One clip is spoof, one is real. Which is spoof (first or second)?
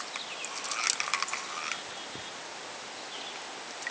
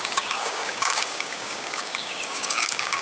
second